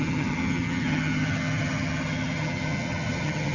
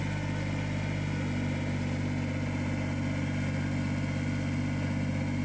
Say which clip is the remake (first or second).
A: first